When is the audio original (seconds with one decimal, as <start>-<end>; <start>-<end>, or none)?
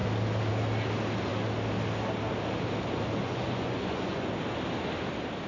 0.0-3.2; 4.3-5.5